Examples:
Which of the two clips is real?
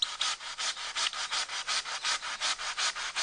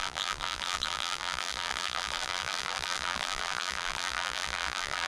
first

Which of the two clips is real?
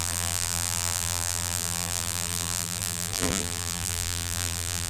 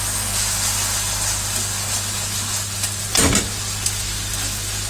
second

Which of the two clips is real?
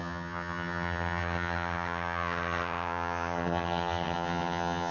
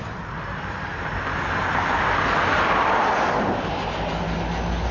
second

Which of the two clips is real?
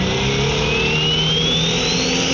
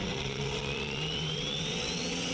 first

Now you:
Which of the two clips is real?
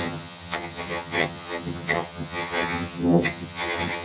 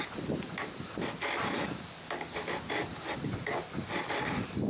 second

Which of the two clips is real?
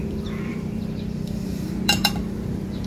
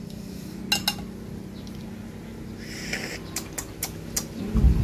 second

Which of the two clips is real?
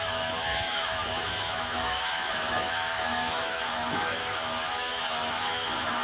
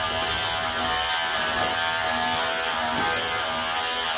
second